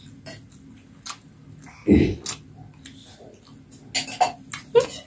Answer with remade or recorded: recorded